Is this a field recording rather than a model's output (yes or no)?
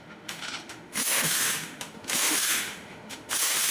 no